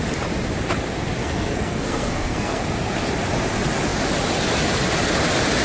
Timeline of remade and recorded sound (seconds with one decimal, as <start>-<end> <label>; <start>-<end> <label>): 0.0-1.2 recorded; 1.2-2.6 remade; 2.6-5.6 recorded